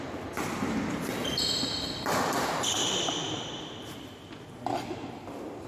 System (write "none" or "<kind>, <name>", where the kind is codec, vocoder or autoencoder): none